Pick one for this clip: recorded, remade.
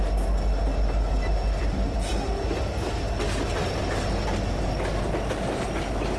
recorded